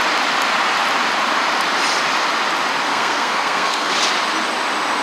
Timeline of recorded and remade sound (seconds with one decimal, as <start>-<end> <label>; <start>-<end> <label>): 0.0-2.9 recorded; 2.9-3.9 remade; 3.9-5.0 recorded